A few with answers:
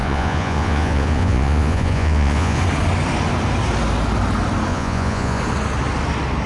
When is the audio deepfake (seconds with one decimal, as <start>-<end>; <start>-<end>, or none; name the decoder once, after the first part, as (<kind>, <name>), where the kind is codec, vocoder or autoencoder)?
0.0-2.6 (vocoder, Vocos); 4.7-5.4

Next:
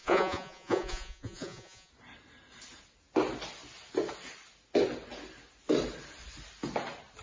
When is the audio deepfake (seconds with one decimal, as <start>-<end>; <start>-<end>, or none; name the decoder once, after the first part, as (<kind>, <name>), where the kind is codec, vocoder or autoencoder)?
0.0-1.9 (vocoder, Vocos)

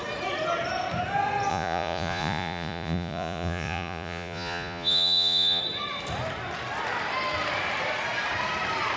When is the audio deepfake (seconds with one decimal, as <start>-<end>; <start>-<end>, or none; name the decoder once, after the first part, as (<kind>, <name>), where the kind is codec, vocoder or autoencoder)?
1.5-5.6 (vocoder, Vocos)